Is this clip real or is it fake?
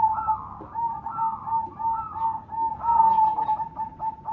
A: real